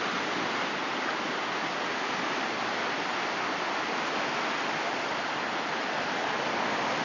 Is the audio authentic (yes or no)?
yes